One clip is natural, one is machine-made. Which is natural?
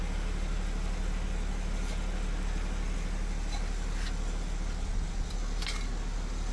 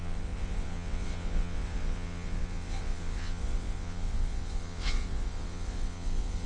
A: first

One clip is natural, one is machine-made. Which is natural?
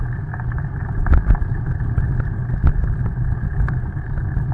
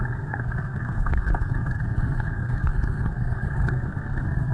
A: first